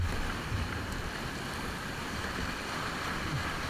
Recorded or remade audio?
recorded